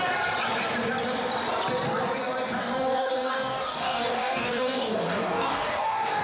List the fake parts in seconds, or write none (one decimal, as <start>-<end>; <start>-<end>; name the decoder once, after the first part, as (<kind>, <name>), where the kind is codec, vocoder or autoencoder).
2.6-6.2 (codec, DAC)